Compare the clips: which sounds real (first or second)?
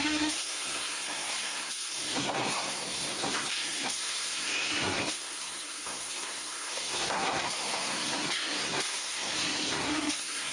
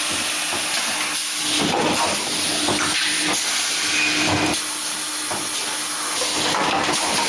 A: second